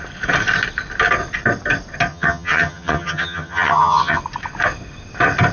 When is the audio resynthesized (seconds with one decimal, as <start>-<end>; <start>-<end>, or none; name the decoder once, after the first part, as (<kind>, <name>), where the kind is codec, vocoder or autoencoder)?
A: 2.1-4.2 (vocoder, HiFi-GAN)